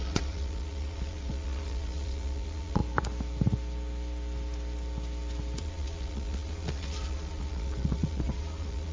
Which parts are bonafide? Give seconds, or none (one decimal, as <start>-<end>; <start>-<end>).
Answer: 2.8-5.6